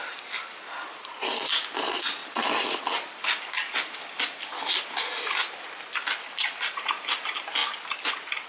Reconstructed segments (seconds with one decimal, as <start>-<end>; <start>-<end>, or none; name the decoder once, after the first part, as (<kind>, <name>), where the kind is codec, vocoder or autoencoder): none